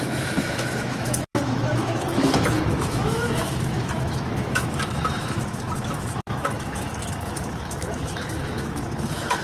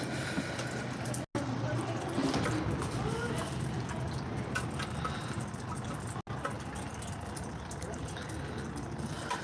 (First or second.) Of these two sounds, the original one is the second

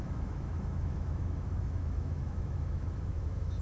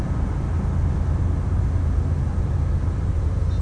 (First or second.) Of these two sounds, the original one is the second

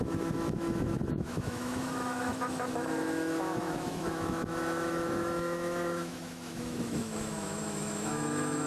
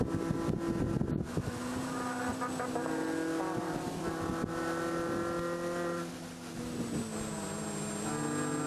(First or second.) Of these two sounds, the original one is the second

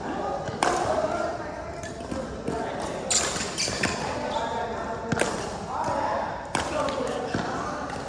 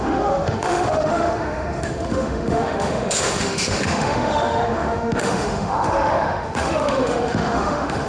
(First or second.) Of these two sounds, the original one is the first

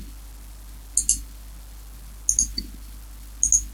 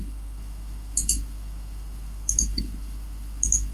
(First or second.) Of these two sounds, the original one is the first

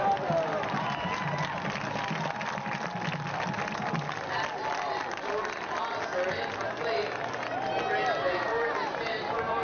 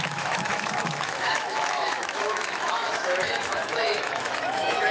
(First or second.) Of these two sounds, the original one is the first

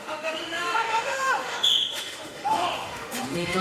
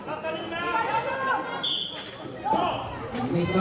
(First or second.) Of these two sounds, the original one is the second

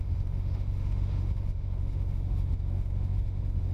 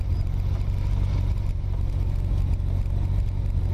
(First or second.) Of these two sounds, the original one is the second